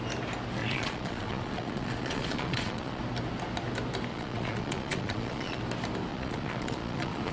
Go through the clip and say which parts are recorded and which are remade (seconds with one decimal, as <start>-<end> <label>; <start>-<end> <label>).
0.0-0.6 recorded; 0.6-3.0 remade; 3.0-4.1 recorded; 4.1-5.6 remade; 5.6-6.1 recorded; 6.1-7.3 remade